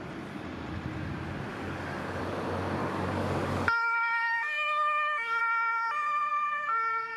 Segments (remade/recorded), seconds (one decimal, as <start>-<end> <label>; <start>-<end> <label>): 0.0-1.5 recorded; 1.5-2.2 remade; 2.2-2.8 recorded; 2.8-5.4 remade; 5.4-6.3 recorded; 6.3-7.2 remade